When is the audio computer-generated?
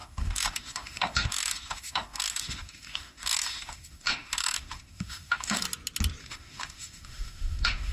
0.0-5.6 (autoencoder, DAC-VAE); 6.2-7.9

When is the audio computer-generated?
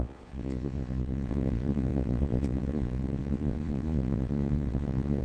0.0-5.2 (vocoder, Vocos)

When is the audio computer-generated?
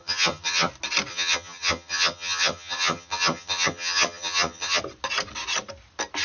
0.0-0.7 (vocoder, HiFi-GAN); 1.1-4.8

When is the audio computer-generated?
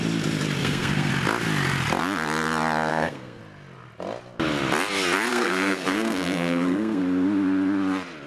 0.6-1.1 (codec, SNAC); 2.9-3.4; 5.3-7.0